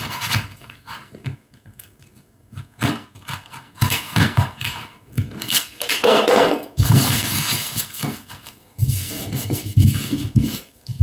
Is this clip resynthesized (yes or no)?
yes